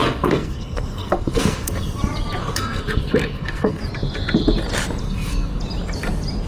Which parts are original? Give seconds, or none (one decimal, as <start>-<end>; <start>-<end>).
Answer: 2.0-2.4; 3.8-5.0; 5.6-6.5